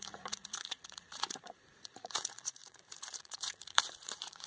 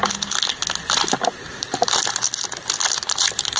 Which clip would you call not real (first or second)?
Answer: first